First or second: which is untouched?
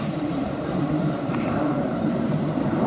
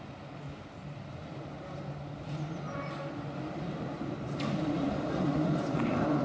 second